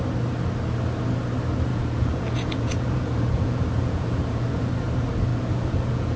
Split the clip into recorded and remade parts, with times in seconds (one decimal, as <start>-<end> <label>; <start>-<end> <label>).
0.0-1.7 recorded; 1.7-4.7 remade; 4.7-5.3 recorded; 5.3-6.2 remade